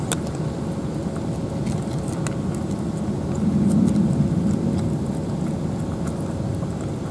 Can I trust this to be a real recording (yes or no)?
yes